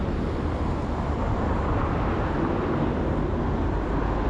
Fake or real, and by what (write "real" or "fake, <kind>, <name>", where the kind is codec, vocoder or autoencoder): real